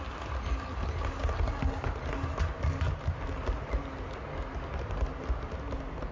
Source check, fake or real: real